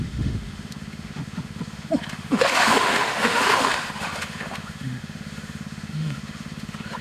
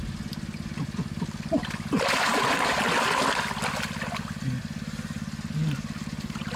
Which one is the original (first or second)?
second